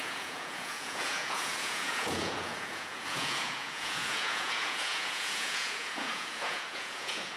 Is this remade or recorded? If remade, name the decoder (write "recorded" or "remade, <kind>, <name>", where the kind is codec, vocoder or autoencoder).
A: remade, vocoder, Vocos